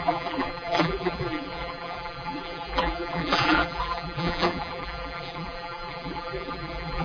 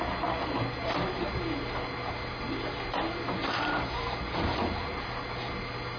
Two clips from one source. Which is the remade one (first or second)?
first